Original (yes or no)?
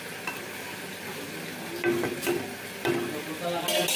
yes